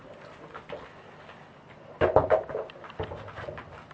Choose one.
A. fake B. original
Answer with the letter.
B